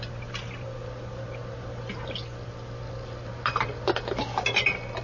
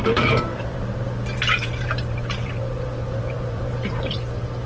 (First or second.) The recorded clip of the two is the first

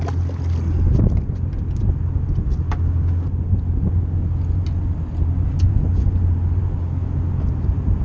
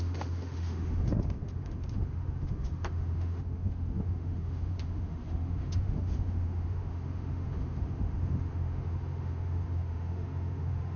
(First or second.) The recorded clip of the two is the first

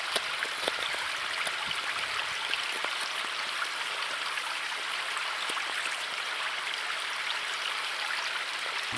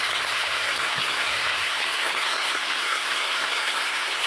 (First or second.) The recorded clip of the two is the first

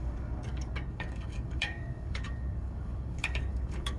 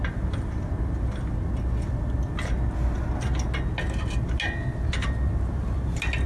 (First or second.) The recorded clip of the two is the second